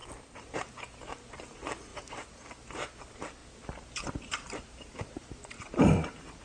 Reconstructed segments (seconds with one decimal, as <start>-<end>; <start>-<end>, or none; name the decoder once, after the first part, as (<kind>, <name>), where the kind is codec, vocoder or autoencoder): 0.0-0.7 (vocoder, BigVGAN v2); 1.9-2.9; 3.4-6.4